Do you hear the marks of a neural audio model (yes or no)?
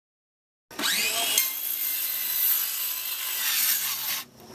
no